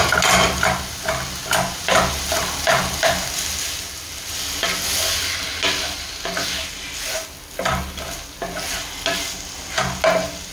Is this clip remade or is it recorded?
recorded